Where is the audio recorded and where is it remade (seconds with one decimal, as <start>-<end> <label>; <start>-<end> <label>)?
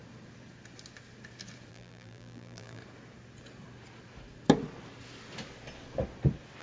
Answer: 0.0-1.7 recorded; 1.7-2.8 remade; 2.8-6.6 recorded